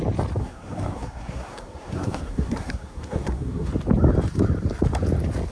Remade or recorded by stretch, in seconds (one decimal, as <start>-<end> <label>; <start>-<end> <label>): 0.0-0.4 recorded; 0.4-3.7 remade; 3.7-5.5 recorded